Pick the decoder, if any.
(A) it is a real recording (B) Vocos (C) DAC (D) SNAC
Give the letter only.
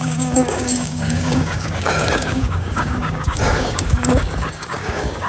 C